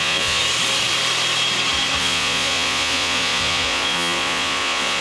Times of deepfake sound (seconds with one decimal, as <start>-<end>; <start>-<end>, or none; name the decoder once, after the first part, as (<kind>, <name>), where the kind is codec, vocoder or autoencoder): 0.0-0.4 (vocoder, Vocos); 2.0-5.0